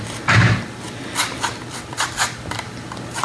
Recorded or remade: recorded